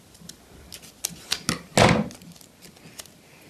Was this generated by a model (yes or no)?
no